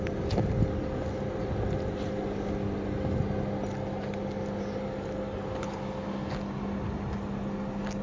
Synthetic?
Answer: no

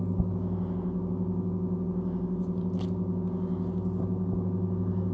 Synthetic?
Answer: no